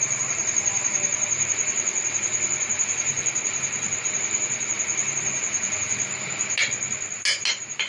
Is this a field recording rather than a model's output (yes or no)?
yes